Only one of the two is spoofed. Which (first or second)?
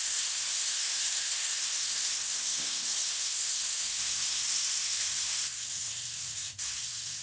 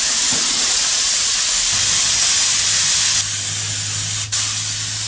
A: first